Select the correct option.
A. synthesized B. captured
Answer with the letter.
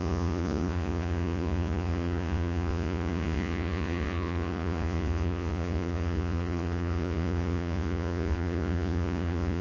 A